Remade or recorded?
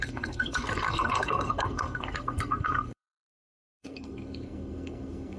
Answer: remade